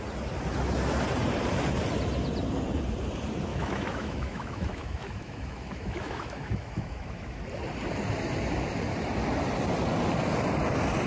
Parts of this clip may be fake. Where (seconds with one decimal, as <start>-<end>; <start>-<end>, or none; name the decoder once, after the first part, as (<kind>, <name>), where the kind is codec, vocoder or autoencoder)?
3.5-7.4 (autoencoder, DAC-VAE)